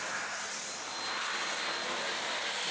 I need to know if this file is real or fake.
fake